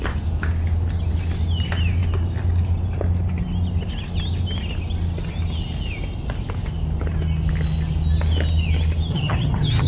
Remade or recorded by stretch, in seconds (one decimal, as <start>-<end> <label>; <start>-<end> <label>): 0.0-9.1 recorded; 9.1-9.9 remade